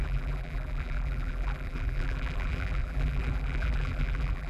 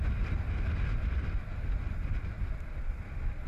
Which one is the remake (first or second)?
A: first